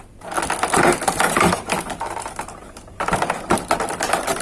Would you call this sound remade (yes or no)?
yes